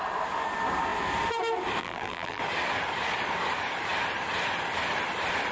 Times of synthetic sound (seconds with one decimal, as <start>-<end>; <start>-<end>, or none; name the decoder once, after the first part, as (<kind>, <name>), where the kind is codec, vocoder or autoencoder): 1.8-2.4 (vocoder, BigVGAN v2)